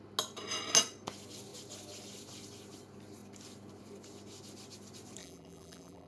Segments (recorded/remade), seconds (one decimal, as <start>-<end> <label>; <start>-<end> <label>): 0.0-5.2 recorded; 5.2-6.1 remade